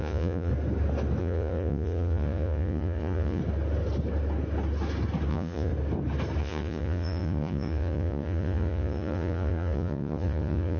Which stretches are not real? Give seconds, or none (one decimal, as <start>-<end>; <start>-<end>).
0.0-0.5; 1.2-3.4; 5.3-5.7; 6.4-10.8